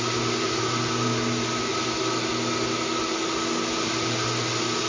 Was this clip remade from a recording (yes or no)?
no